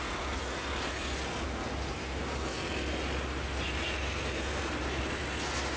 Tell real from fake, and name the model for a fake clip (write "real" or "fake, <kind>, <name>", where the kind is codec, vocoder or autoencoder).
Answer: real